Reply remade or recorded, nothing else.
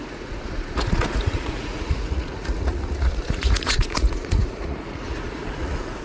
remade